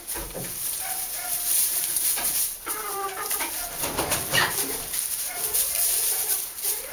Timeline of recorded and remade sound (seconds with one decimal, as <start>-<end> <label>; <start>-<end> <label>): 0.0-6.9 remade